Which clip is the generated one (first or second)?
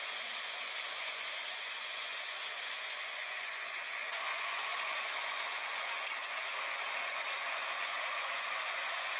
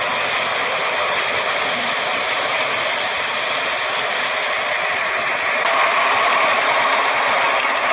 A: first